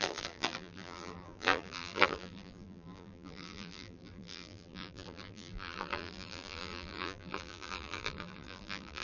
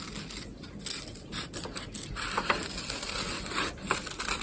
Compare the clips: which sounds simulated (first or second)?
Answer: first